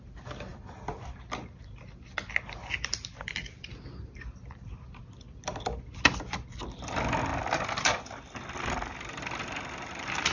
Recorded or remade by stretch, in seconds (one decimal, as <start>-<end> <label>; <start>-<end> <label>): 0.0-10.3 recorded